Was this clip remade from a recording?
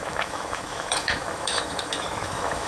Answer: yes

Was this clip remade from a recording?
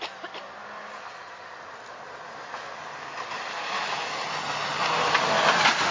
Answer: no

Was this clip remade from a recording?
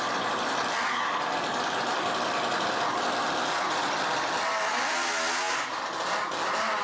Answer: no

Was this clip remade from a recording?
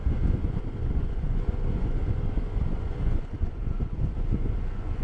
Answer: yes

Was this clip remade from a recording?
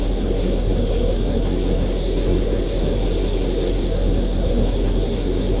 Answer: yes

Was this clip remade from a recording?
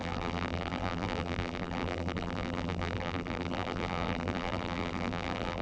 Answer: yes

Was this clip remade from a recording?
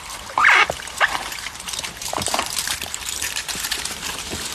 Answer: yes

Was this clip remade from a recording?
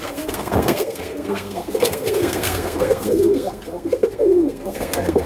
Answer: yes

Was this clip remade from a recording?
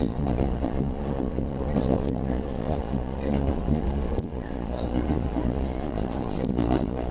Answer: yes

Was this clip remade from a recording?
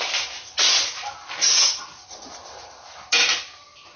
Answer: no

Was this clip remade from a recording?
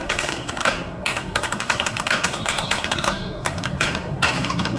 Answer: yes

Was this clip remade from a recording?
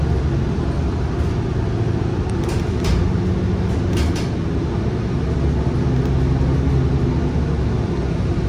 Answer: no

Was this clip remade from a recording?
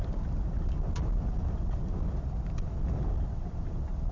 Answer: yes